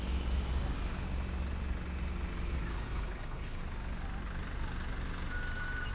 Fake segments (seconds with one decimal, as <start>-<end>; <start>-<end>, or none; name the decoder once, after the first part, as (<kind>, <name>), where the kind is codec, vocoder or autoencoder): 2.7-3.6 (codec, HILCodec)